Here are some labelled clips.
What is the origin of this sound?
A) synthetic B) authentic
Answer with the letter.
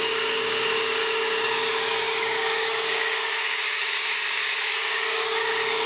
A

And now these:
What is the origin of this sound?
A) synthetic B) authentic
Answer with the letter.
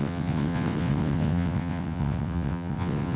A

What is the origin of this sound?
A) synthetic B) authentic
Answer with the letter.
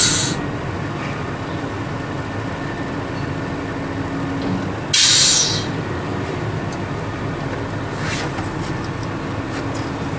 B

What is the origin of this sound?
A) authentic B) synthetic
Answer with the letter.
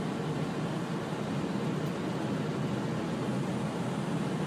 A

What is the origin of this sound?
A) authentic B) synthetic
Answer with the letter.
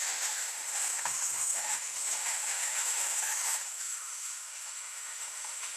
B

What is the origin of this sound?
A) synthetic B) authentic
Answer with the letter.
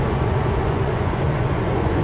A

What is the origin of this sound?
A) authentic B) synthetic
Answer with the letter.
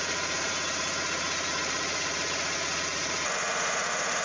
B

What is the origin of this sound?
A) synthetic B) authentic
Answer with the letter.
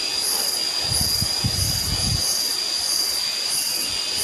B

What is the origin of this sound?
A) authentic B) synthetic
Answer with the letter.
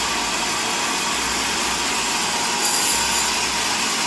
A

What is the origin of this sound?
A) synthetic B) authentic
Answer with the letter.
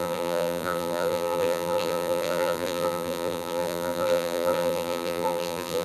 A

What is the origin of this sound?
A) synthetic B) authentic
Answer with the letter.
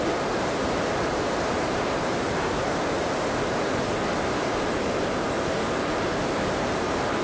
A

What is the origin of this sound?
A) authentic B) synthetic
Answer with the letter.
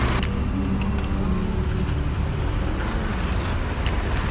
A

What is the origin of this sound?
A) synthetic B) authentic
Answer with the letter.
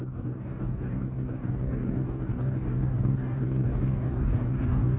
A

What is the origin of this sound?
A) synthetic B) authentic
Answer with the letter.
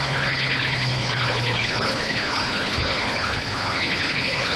A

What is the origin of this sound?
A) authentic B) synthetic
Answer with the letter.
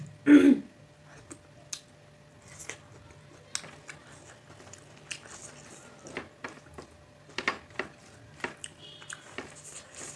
A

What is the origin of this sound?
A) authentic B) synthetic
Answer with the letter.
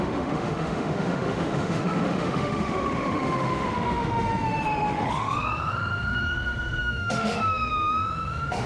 B